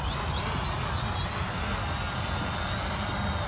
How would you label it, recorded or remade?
recorded